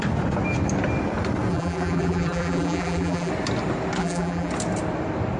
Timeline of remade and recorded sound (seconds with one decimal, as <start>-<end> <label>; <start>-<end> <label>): 0.0-1.5 recorded; 1.5-3.3 remade; 3.3-4.0 recorded; 4.0-4.5 remade; 4.5-5.4 recorded